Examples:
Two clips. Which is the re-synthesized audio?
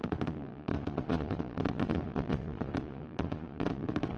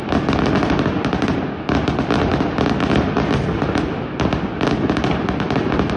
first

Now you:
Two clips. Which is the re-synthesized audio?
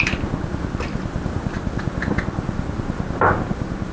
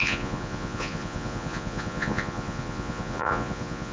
second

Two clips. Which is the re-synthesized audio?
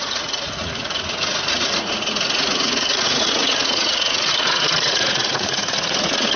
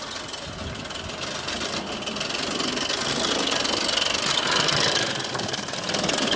first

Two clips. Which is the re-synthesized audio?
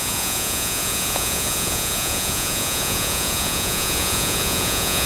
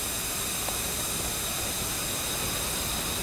first